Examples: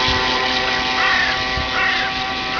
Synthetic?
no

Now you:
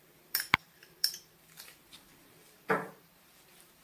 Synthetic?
yes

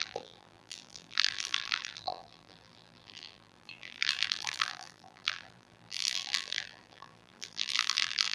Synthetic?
yes